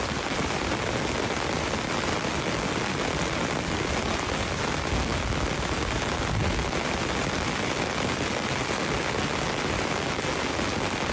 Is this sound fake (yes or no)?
no